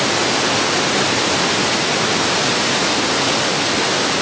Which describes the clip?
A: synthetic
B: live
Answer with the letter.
B